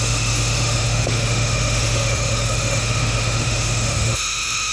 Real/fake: fake